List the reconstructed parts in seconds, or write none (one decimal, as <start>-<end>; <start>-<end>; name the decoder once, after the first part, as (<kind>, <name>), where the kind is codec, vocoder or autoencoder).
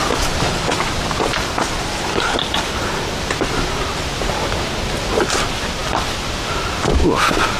none